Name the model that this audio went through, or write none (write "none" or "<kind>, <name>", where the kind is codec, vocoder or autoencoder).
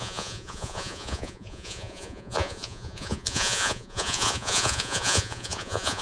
vocoder, Vocos